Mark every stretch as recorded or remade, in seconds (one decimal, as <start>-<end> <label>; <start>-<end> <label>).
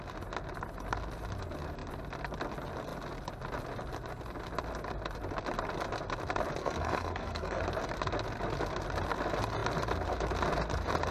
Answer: 0.0-6.6 recorded; 6.6-7.6 remade; 7.6-11.1 recorded